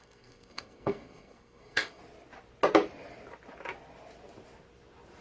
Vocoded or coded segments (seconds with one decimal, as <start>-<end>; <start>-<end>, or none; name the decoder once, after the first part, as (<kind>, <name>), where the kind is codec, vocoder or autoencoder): 0.0-2.0 (codec, SNAC)

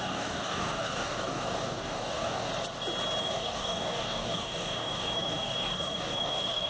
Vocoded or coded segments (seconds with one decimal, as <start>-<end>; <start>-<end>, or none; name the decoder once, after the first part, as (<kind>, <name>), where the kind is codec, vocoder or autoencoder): 0.0-2.5 (codec, DAC); 3.2-6.7